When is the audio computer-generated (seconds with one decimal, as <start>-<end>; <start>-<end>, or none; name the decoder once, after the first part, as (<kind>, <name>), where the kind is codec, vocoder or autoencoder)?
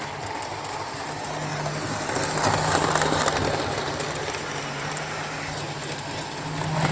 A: none